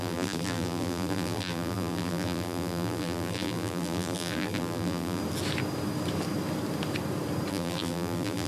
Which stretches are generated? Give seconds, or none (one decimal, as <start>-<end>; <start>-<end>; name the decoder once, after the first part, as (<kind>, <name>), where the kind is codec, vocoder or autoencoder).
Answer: 0.0-5.2 (vocoder, BigVGAN v2); 7.5-8.5